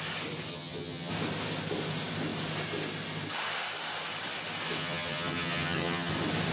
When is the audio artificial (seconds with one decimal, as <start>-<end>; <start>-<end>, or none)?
0.5-1.1; 4.8-6.1